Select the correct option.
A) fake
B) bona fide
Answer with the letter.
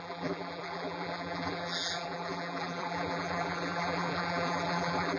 A